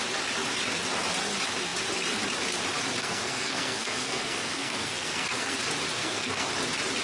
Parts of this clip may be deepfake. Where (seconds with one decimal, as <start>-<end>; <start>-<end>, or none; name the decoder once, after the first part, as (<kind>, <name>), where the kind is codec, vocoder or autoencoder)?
3.0-5.6 (codec, SNAC); 6.0-6.5